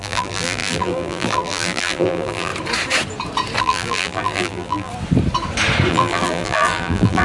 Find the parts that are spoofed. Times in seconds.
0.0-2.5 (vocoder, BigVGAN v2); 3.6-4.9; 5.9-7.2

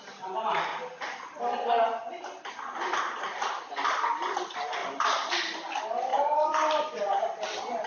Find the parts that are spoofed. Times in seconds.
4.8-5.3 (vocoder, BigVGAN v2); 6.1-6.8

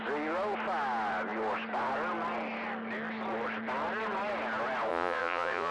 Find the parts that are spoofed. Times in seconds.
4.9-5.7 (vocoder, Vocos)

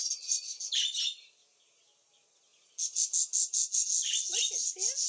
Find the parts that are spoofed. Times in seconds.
none

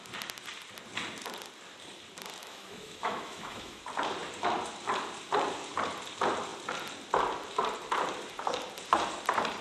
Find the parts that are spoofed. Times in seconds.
2.4-3.8 (autoencoder, DAC-VAE)

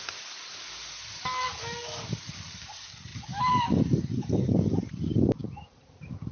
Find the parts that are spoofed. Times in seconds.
none